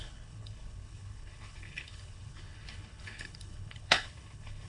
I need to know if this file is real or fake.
fake